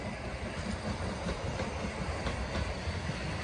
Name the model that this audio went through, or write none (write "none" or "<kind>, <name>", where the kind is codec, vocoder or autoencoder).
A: none